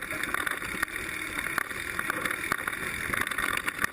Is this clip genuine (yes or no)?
yes